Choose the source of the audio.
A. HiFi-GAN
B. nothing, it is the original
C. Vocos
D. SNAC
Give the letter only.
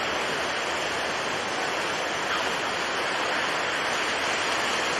B